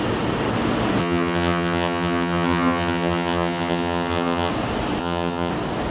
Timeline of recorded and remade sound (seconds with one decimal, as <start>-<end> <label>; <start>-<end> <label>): 0.0-1.0 recorded; 1.0-4.5 remade; 4.5-5.0 recorded; 5.0-5.5 remade; 5.5-5.9 recorded